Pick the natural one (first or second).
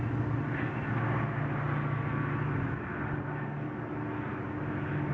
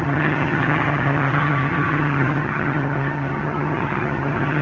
first